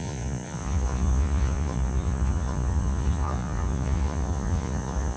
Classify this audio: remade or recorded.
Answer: remade